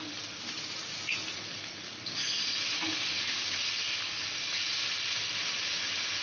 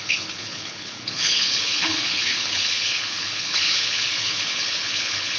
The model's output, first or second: second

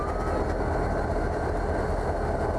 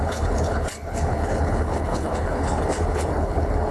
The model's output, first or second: second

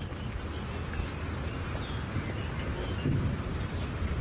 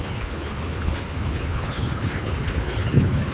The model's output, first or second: second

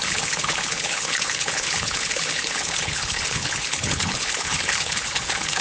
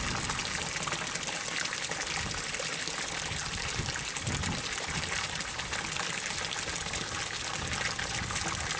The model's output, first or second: first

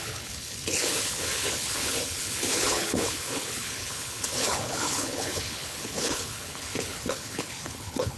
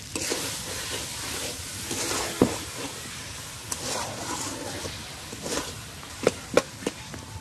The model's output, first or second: first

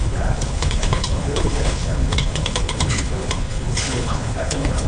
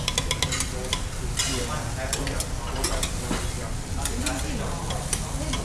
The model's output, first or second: first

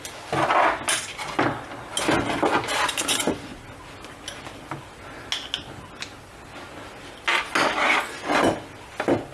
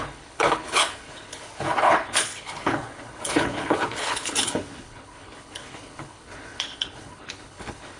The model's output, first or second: second